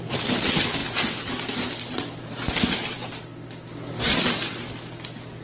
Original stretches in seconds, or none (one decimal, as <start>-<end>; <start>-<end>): 0.0-5.4